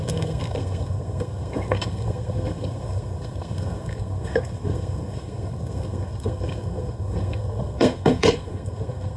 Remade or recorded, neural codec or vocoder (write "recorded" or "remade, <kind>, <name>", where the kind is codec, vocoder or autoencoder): remade, codec, SNAC